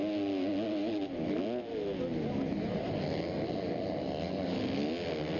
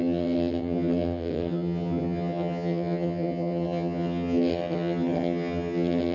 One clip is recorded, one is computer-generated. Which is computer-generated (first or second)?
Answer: second